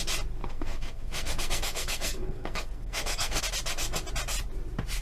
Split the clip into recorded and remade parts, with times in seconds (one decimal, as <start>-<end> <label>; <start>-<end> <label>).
0.0-0.4 recorded; 0.4-3.4 remade; 3.4-5.0 recorded